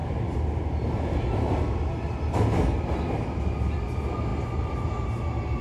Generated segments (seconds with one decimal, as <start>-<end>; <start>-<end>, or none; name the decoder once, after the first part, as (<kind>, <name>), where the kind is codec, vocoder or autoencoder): none